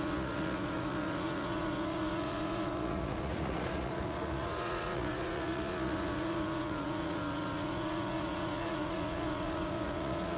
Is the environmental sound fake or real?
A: fake